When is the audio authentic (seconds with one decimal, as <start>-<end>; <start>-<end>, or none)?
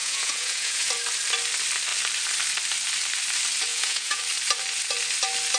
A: 0.9-3.7; 4.2-5.6